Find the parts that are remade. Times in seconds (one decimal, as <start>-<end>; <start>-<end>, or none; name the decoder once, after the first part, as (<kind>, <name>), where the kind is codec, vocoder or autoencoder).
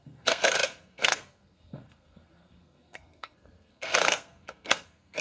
0.0-5.2 (codec, SNAC)